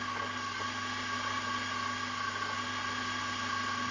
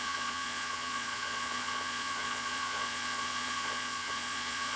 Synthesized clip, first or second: second